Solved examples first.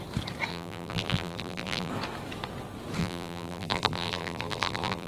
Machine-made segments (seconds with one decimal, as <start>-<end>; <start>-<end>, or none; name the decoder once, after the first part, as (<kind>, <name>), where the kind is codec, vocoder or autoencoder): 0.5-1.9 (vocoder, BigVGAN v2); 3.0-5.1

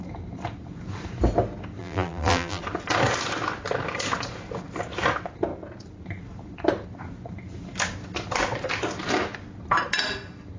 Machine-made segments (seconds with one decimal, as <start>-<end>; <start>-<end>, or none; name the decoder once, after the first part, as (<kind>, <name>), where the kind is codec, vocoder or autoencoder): 1.8-2.6 (vocoder, BigVGAN v2)

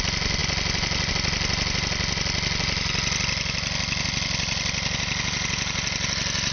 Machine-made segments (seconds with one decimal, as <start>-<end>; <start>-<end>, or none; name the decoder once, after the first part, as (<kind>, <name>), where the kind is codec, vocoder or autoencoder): none

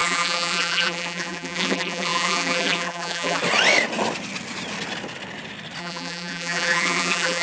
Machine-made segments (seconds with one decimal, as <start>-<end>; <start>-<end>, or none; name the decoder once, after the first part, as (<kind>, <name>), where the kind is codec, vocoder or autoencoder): 0.0-3.4 (vocoder, BigVGAN v2); 5.8-7.4

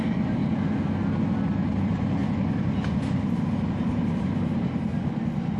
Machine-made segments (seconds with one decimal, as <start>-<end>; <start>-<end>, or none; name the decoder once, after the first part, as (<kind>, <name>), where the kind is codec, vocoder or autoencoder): 0.0-0.4 (vocoder, BigVGAN v2); 1.8-2.2; 3.9-4.9

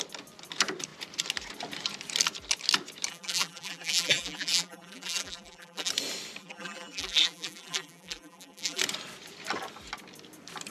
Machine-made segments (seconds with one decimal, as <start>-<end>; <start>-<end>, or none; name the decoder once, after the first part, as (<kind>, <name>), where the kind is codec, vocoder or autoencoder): 3.1-5.9 (vocoder, BigVGAN v2); 6.4-8.8